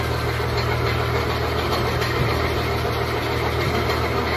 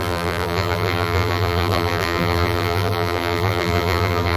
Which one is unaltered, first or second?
first